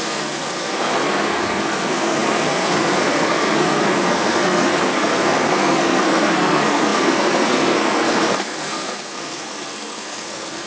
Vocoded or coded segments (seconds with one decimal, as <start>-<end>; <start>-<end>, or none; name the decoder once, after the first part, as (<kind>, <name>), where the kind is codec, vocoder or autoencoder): 0.0-10.7 (codec, SNAC)